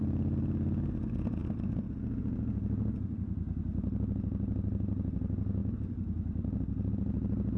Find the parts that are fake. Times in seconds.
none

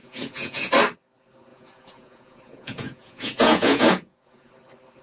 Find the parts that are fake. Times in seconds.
0.0-0.7; 1.5-4.5

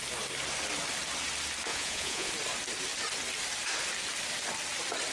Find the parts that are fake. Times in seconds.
1.7-2.3

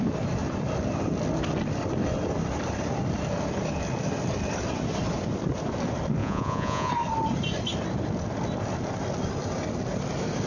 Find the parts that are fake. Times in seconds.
6.2-6.9

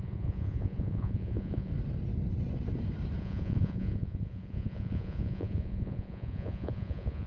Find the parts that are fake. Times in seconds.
0.0-1.7; 3.2-7.3

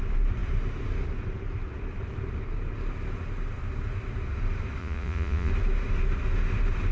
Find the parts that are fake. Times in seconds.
4.8-5.5

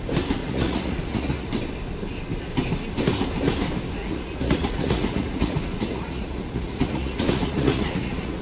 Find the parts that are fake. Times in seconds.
0.4-1.5; 4.0-8.4

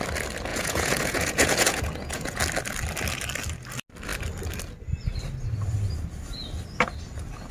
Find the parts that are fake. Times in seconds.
0.5-2.4